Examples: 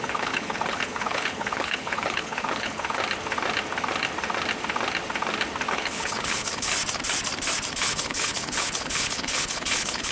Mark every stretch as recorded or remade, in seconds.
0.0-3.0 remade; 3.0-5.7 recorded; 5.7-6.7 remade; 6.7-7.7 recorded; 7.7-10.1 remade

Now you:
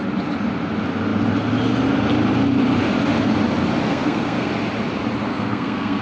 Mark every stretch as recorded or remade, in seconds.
0.0-3.9 recorded; 3.9-4.5 remade; 4.5-5.3 recorded; 5.3-6.0 remade

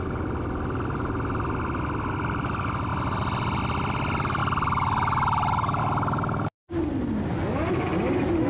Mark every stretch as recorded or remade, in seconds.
0.0-8.5 recorded

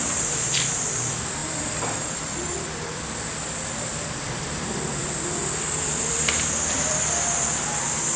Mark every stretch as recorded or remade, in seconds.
0.0-8.2 remade

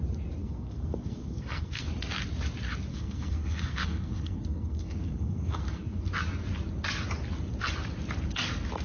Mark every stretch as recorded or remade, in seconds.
0.0-0.4 recorded; 0.4-1.9 remade; 1.9-2.9 recorded; 2.9-6.1 remade; 6.1-8.8 recorded

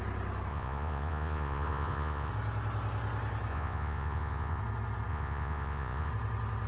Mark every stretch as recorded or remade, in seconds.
0.0-0.5 recorded; 0.5-2.3 remade; 2.3-3.5 recorded; 3.5-4.6 remade; 4.6-5.1 recorded; 5.1-6.1 remade; 6.1-6.7 recorded

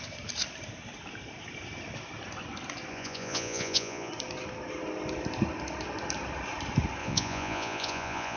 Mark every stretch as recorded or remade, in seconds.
0.0-2.9 recorded; 2.9-4.1 remade; 4.1-7.0 recorded; 7.0-8.4 remade